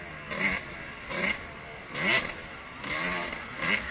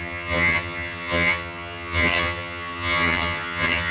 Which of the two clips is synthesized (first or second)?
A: second